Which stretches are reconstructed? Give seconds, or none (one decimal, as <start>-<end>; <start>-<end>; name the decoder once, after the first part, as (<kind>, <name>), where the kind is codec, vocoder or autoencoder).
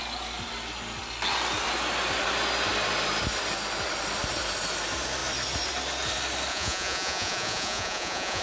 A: 6.5-8.4 (vocoder, Vocos)